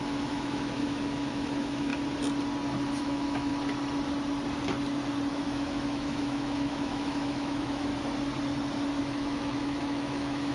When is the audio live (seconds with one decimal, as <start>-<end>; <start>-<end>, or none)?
1.9-3.0; 3.5-5.3; 7.9-9.0